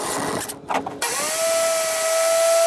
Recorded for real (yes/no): yes